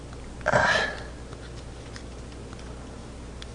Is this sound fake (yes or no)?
no